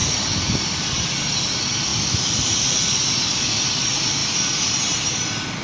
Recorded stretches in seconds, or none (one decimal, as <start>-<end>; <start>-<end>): 0.0-4.2; 4.8-5.6